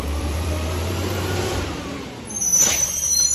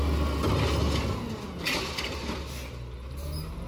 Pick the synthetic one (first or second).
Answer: first